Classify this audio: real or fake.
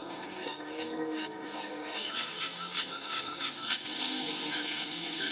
fake